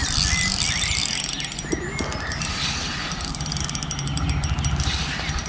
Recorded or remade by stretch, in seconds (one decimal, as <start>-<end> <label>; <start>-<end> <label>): 0.0-5.5 recorded